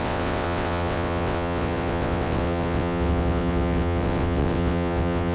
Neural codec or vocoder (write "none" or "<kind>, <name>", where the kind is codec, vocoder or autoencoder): vocoder, WaveNeXt